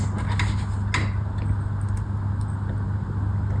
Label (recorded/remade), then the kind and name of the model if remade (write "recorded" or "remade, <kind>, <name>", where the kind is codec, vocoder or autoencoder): recorded